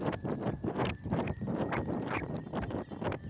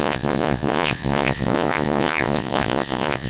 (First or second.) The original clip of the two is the first